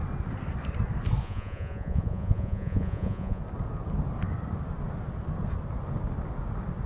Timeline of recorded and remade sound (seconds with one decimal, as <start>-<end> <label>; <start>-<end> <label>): 0.0-1.2 recorded; 1.2-3.4 remade; 3.4-6.9 recorded